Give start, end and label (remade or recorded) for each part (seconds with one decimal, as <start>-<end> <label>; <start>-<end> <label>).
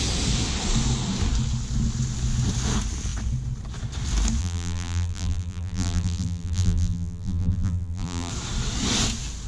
0.0-4.4 recorded; 4.4-8.3 remade; 8.3-9.5 recorded